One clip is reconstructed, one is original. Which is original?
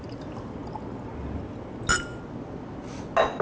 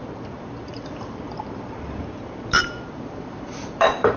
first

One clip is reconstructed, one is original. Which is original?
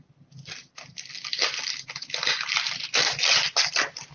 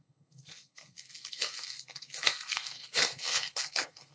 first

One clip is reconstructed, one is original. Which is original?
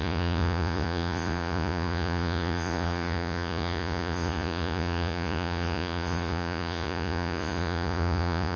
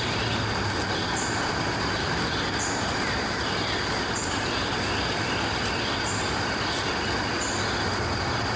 second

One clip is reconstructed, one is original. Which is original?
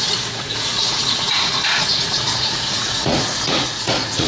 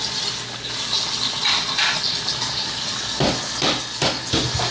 second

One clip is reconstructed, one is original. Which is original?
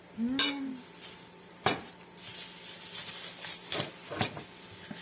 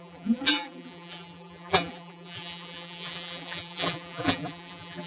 first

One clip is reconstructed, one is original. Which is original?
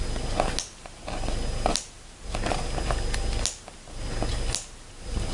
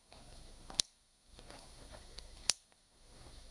first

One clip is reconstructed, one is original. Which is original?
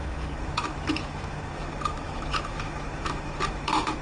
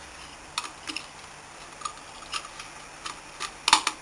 second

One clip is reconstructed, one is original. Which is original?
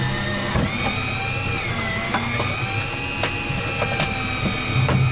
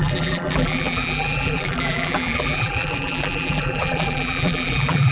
first